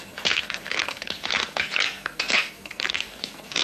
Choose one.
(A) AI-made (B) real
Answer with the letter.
A